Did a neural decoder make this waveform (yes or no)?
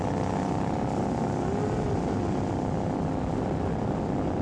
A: no